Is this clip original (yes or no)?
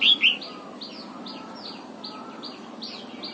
yes